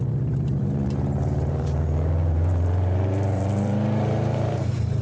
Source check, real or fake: fake